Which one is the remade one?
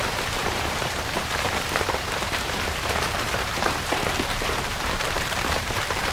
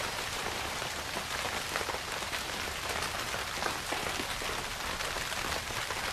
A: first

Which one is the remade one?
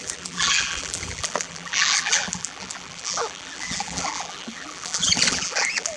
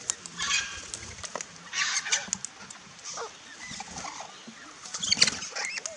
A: first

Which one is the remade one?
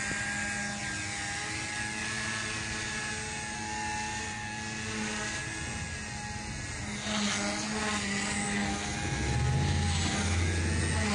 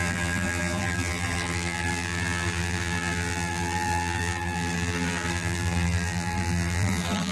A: second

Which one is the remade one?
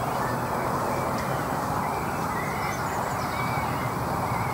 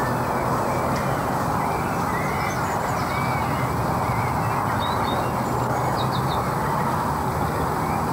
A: first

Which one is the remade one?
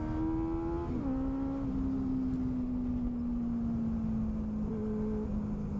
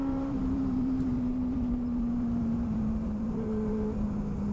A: second